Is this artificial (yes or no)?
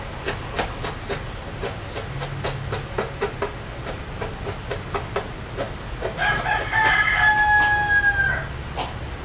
no